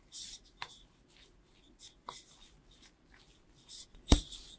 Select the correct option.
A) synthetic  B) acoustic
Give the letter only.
B